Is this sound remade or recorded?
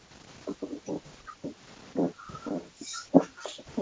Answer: recorded